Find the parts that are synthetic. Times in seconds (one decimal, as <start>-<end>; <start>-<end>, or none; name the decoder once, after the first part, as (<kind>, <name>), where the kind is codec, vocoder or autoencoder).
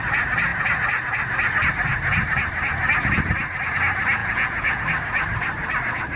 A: 4.2-4.8 (vocoder, Vocos)